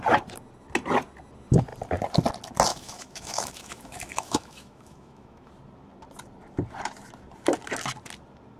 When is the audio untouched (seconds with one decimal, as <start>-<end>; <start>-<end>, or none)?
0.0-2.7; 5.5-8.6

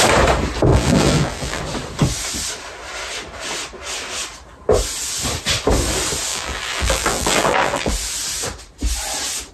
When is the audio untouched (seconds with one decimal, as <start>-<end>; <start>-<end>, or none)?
0.0-0.7; 1.6-6.3; 7.9-9.5

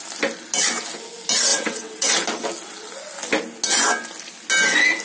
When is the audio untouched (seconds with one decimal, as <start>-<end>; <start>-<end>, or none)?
0.0-1.5; 2.1-5.0

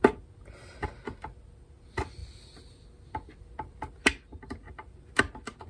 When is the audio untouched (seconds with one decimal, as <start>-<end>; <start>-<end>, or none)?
0.0-5.7